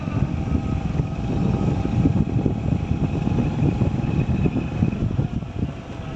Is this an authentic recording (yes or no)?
yes